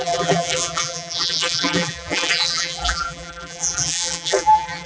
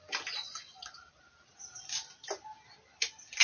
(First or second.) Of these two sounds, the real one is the second